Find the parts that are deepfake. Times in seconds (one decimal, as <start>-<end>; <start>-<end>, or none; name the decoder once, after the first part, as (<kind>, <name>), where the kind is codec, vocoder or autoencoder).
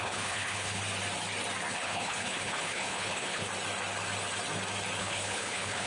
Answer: 0.0-0.8 (codec, HILCodec); 1.7-3.5; 5.0-5.9